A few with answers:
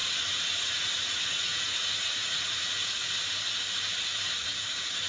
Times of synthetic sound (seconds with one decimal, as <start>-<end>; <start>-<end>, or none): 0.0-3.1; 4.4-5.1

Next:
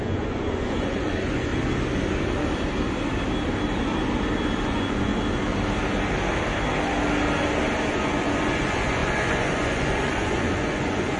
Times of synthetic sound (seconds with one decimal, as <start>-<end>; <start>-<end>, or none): 0.0-1.5; 4.6-5.1; 7.9-11.2

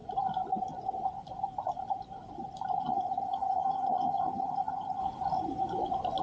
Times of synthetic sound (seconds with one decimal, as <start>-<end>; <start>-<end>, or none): 2.8-5.0

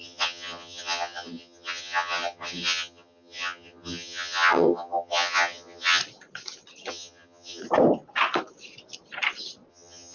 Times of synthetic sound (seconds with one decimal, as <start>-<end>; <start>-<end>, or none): 0.0-6.0; 6.9-7.6; 9.7-10.1